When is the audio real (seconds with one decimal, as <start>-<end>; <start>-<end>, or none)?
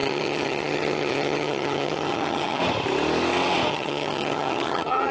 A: 2.6-3.7